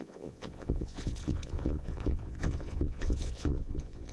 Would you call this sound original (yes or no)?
no